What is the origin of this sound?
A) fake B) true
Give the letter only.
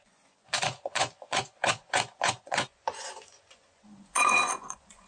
A